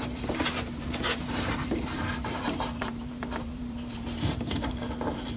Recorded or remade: remade